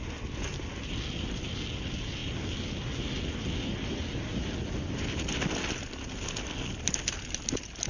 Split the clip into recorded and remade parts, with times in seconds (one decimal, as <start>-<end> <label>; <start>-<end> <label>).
0.0-7.9 recorded